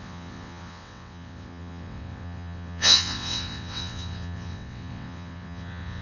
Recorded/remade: remade